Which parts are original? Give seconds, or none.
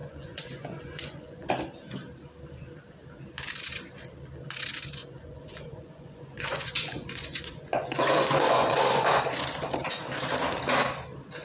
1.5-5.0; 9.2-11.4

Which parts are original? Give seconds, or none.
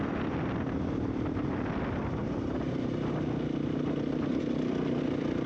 0.0-5.5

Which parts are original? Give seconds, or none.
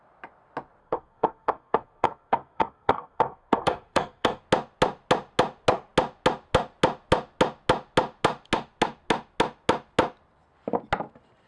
0.0-0.8; 4.4-11.5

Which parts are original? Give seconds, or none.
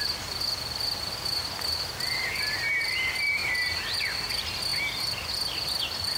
3.4-4.3; 4.7-5.3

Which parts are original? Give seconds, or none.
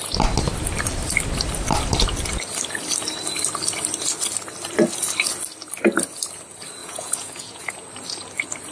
0.0-6.8; 7.7-8.7